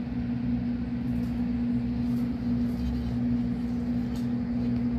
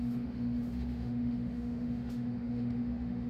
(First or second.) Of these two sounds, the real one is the first